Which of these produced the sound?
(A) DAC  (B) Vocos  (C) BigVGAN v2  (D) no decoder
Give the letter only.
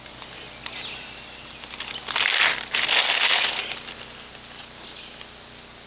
D